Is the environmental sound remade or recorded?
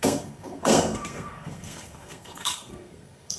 remade